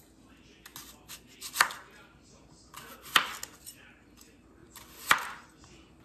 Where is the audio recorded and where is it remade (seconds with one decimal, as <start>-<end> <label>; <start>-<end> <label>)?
0.0-6.0 recorded